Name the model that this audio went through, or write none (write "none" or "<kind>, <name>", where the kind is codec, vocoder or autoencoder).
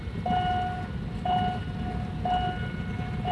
none